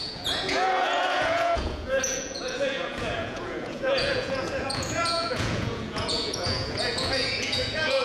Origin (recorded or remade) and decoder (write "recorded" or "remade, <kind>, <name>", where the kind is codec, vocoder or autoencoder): remade, vocoder, Vocos